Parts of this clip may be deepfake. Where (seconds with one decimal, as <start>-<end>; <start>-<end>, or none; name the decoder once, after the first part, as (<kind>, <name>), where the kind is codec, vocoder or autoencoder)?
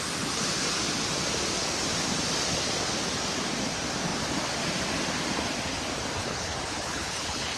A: 6.2-7.6 (codec, HILCodec)